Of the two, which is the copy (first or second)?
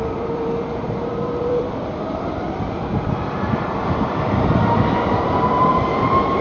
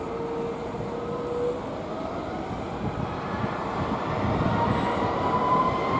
first